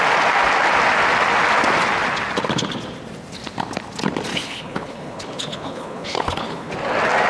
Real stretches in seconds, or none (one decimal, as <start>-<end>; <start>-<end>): 0.0-4.3; 6.7-7.3